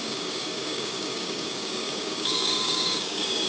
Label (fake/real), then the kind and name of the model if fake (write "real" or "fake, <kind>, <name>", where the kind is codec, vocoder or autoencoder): fake, codec, DAC